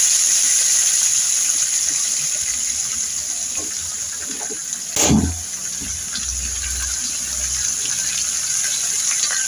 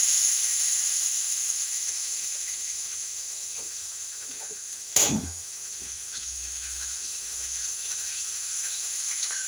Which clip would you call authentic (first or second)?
first